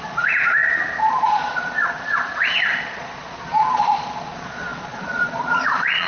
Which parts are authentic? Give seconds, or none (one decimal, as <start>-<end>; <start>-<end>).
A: none